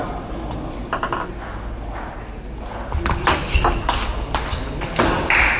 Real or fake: real